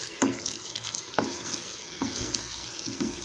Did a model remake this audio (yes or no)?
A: yes